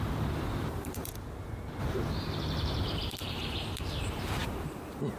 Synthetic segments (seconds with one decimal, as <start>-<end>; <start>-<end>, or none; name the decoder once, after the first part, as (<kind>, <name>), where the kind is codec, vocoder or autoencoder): 0.0-1.1 (vocoder, BigVGAN v2); 1.8-3.4; 4.0-5.2